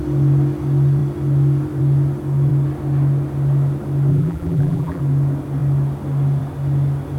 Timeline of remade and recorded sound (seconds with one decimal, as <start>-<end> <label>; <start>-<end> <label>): 0.0-4.1 recorded; 4.1-5.0 remade; 5.0-7.2 recorded